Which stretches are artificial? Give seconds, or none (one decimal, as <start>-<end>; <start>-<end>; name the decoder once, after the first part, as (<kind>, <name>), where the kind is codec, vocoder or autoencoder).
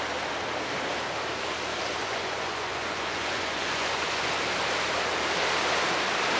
2.0-4.3 (vocoder, Vocos)